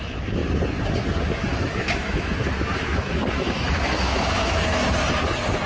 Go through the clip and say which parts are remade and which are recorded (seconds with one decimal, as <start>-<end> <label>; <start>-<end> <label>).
0.0-1.5 recorded; 1.5-4.9 remade; 4.9-5.7 recorded